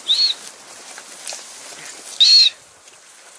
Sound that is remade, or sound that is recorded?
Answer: recorded